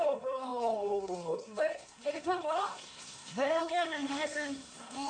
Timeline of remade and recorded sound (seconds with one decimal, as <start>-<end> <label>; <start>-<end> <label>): 0.0-5.1 remade